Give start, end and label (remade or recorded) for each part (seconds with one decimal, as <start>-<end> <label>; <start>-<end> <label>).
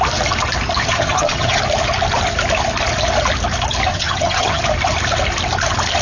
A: 0.0-0.8 recorded; 0.8-1.6 remade; 1.6-3.9 recorded; 3.9-4.6 remade; 4.6-6.0 recorded